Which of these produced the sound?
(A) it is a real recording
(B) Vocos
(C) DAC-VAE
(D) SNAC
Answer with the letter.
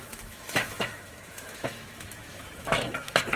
C